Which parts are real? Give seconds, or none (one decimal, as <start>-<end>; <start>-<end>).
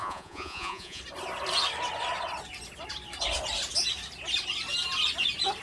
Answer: 1.0-5.6